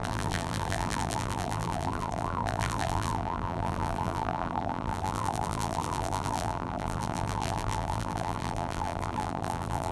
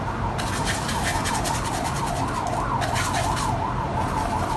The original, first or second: second